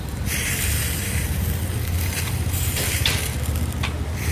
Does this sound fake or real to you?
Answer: fake